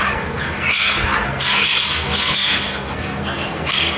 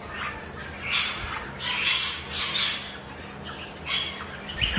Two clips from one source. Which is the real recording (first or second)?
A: second